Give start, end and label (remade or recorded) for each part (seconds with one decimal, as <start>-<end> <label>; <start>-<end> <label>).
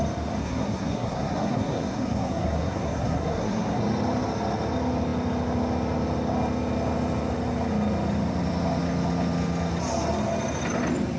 0.0-0.4 recorded; 0.4-3.8 remade; 3.8-11.2 recorded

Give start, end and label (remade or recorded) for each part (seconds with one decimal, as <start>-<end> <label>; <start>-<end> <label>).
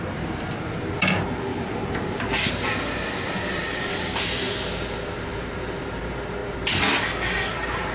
0.0-1.5 recorded; 1.5-2.5 remade; 2.5-7.9 recorded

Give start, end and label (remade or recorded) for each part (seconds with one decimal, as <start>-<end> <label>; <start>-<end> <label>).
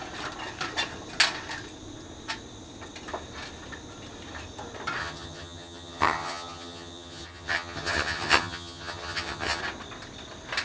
0.0-5.0 recorded; 5.0-9.6 remade; 9.6-10.6 recorded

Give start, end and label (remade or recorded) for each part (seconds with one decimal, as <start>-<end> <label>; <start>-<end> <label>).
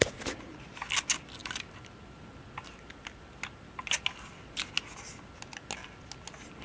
0.0-6.6 recorded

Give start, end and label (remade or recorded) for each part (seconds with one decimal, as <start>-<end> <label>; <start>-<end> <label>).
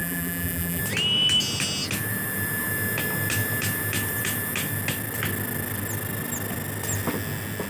0.0-0.8 remade; 0.8-7.7 recorded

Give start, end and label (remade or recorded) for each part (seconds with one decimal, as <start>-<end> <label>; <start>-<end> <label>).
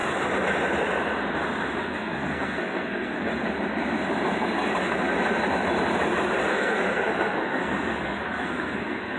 0.0-1.8 recorded; 1.8-3.3 remade; 3.3-6.5 recorded; 6.5-9.2 remade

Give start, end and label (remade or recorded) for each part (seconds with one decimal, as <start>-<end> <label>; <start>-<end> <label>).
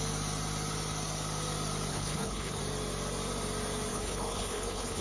0.0-1.9 recorded; 1.9-2.6 remade; 2.6-3.9 recorded; 3.9-5.0 remade